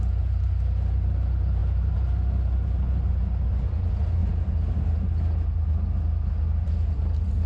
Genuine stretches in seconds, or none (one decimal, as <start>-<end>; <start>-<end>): 0.0-7.5